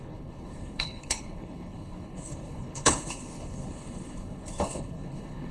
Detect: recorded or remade remade